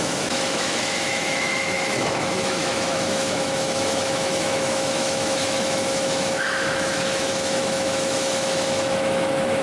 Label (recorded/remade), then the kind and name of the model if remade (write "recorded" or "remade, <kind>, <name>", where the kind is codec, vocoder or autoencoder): remade, autoencoder, DAC-VAE